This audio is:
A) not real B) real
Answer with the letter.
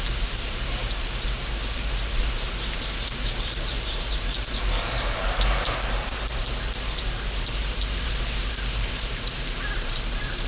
A